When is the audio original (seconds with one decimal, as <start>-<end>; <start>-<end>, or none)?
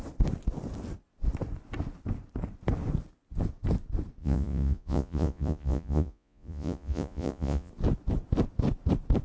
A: 0.0-4.2; 7.7-9.2